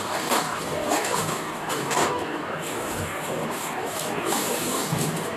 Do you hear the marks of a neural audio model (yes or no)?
yes